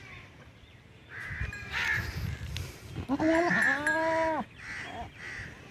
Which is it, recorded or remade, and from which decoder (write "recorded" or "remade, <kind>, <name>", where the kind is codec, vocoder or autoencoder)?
recorded